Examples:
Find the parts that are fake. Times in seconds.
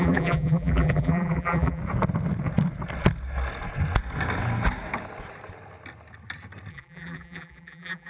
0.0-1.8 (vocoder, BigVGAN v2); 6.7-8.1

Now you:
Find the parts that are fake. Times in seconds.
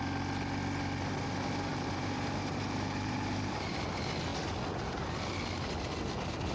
1.7-3.9 (vocoder, BigVGAN v2)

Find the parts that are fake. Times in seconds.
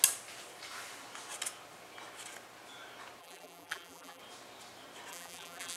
3.2-4.2 (vocoder, BigVGAN v2); 5.1-5.8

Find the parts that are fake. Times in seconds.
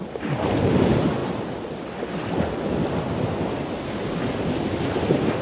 none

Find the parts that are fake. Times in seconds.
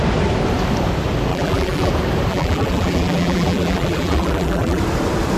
1.3-1.9 (vocoder, BigVGAN v2); 2.3-4.8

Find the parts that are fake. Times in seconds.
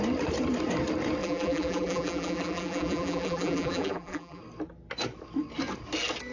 1.2-4.4 (vocoder, BigVGAN v2)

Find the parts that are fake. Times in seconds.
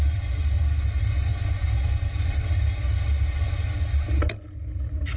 none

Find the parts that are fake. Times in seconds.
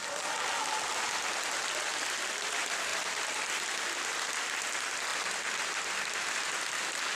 2.9-3.5 (vocoder, BigVGAN v2); 5.1-6.8